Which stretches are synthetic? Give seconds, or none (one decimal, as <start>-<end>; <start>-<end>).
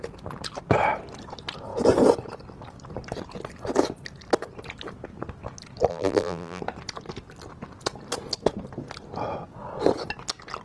5.9-6.6